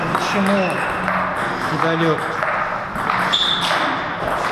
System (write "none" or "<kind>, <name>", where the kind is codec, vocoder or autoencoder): none